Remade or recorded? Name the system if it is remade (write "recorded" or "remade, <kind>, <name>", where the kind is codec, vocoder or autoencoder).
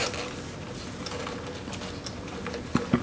recorded